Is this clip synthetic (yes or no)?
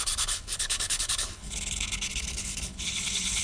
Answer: yes